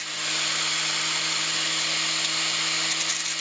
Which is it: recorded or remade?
recorded